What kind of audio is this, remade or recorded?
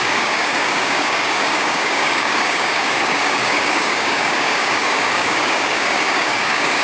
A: remade